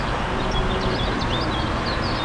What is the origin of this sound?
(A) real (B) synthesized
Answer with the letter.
A